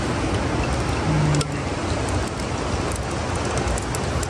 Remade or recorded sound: recorded